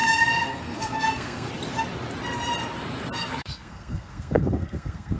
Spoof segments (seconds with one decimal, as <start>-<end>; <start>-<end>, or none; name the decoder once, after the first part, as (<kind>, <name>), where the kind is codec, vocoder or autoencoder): 0.0-1.5 (codec, SNAC); 3.2-5.2